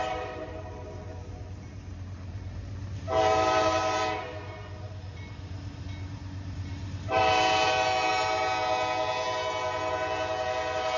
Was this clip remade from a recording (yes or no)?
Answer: yes